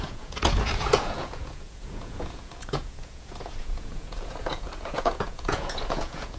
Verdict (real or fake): fake